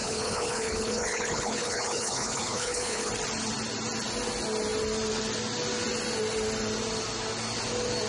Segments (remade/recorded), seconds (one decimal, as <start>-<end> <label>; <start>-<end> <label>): 0.0-3.1 remade; 3.1-8.1 recorded